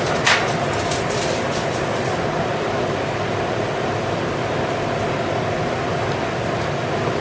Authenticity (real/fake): real